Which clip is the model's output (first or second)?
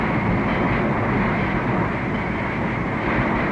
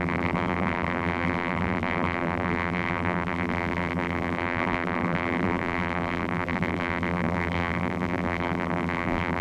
second